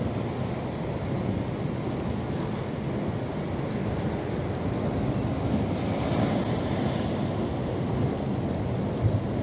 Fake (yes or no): no